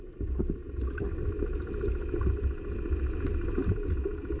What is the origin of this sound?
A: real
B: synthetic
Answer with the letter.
A